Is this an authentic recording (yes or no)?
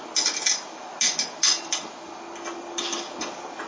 yes